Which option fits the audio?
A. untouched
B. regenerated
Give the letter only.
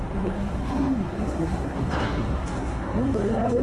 B